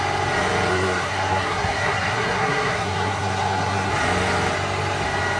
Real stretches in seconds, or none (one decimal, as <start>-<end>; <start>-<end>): 0.0-0.7; 3.9-5.4